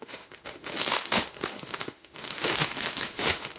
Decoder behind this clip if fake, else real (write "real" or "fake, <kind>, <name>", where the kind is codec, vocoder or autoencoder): fake, autoencoder, DAC-VAE